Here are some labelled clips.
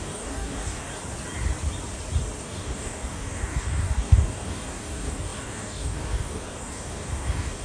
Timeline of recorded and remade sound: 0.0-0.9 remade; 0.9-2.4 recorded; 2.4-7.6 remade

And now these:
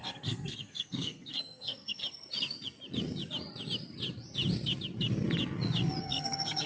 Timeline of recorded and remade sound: 0.0-2.0 remade; 2.0-6.0 recorded; 6.0-6.7 remade

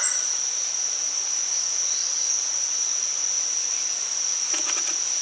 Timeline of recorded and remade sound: 0.0-2.0 remade; 2.0-4.3 recorded; 4.3-5.2 remade